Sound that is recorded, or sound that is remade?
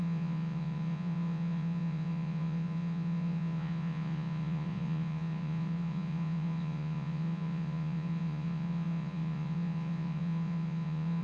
remade